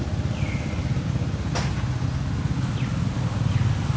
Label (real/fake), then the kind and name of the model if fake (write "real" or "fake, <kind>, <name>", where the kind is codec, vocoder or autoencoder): real